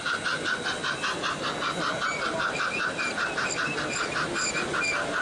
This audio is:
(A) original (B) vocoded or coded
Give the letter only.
A